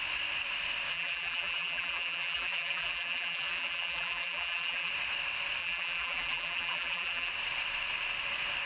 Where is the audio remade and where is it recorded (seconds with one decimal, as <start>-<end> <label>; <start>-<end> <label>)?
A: 0.0-0.9 recorded; 0.9-4.9 remade; 4.9-5.6 recorded; 5.6-7.3 remade; 7.3-8.7 recorded